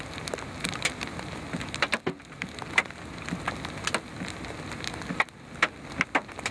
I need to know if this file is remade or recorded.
recorded